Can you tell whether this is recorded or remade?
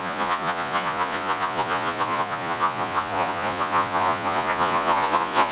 remade